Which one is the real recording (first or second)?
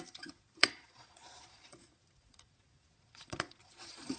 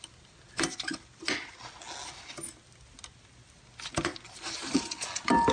second